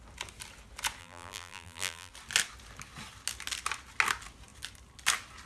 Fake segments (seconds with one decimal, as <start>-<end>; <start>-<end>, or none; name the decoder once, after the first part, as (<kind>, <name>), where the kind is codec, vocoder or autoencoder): 1.0-2.1 (vocoder, BigVGAN v2)